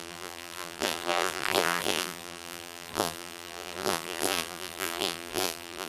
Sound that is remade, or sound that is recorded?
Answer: remade